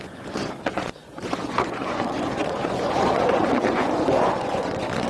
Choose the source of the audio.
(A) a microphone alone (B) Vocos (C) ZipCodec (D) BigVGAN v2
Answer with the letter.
B